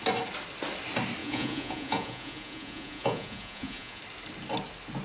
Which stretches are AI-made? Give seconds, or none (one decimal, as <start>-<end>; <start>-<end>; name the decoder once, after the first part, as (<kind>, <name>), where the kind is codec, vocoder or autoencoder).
1.2-4.0 (vocoder, Vocos)